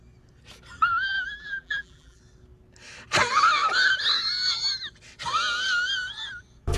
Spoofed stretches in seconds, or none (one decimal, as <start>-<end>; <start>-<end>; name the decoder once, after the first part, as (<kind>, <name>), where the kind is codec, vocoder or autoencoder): 0.9-2.2 (vocoder, BigVGAN v2)